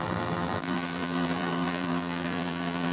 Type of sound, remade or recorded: remade